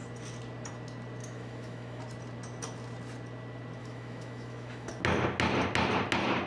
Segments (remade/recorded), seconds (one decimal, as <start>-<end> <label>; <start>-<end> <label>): 0.0-1.2 recorded; 1.2-2.0 remade; 2.0-3.8 recorded; 3.8-4.9 remade; 4.9-6.5 recorded